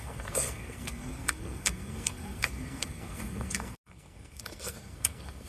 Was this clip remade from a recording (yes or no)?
yes